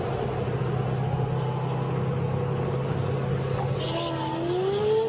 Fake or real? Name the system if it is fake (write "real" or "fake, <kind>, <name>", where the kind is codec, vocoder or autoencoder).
real